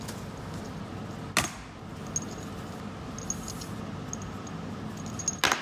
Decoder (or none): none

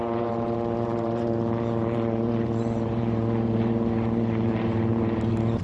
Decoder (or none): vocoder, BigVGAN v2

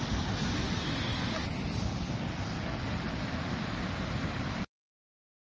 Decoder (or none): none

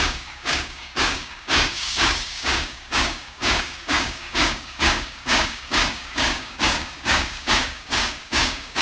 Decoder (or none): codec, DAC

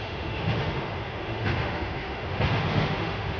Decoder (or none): autoencoder, DAC-VAE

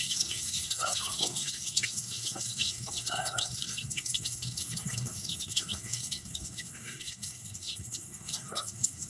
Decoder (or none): codec, SNAC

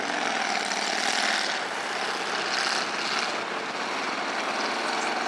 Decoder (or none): none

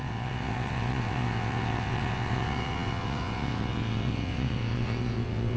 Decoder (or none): vocoder, WaveNeXt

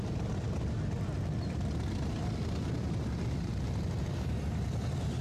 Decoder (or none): none